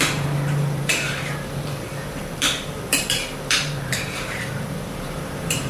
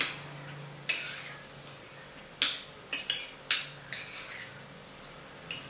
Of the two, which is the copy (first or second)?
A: first